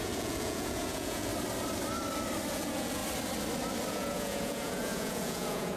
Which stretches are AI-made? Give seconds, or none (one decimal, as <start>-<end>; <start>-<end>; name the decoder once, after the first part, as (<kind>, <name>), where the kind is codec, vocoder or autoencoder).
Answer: 0.0-1.3 (vocoder, Vocos); 2.5-3.0; 3.9-5.8